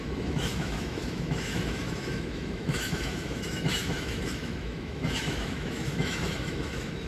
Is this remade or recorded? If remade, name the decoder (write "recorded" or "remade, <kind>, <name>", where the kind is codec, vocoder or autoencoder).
remade, autoencoder, DAC-VAE